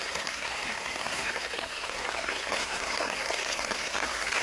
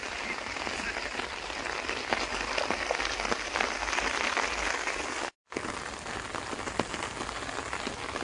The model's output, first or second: first